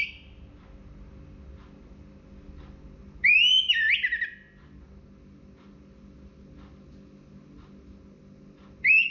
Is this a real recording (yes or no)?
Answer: yes